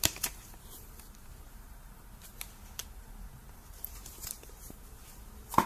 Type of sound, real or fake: fake